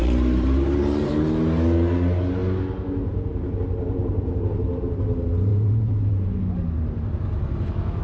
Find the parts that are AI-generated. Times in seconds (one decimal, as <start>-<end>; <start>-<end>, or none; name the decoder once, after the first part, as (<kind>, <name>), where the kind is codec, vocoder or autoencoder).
0.0-1.1 (vocoder, BigVGAN v2); 4.0-5.0; 5.5-6.1